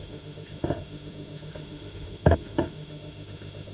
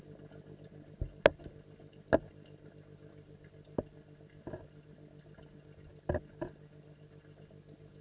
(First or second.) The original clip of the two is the second